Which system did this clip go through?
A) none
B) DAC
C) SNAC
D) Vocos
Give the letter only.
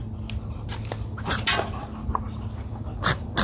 A